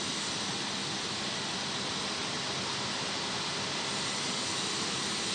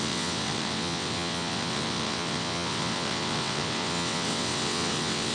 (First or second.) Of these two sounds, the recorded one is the first